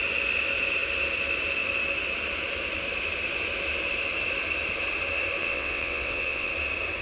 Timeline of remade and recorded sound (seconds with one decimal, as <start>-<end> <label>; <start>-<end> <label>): 0.0-5.4 recorded; 5.4-6.5 remade; 6.5-7.0 recorded